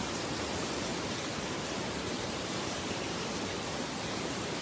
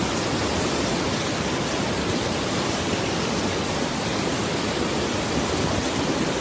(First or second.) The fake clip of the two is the first